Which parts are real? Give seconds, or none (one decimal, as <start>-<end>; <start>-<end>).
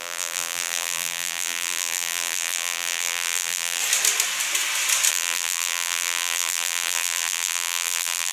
3.8-5.1